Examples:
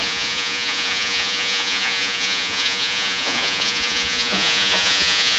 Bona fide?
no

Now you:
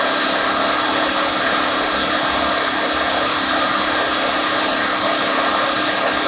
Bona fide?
yes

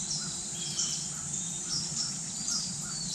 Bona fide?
no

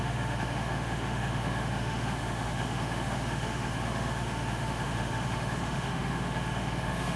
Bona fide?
no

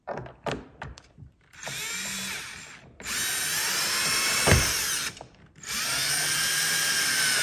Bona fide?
no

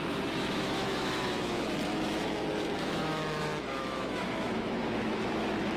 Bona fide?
no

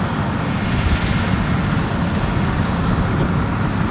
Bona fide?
yes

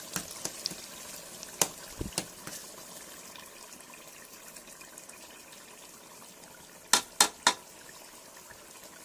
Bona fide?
yes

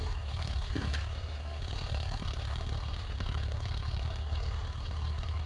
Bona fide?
no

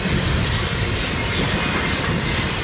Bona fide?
yes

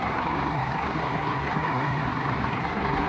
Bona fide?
no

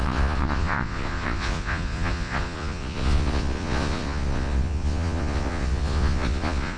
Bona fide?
no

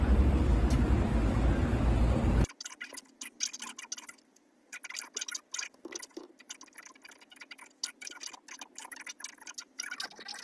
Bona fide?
yes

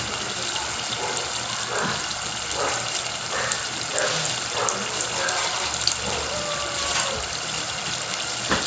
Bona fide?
yes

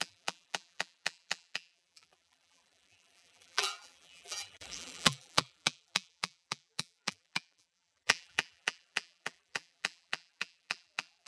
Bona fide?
no